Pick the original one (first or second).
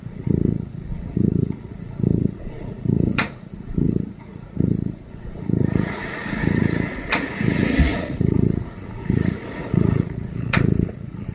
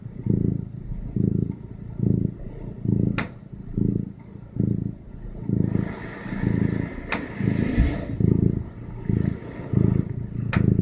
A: second